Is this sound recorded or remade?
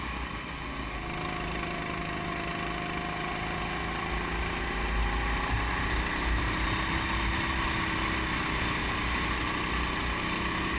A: recorded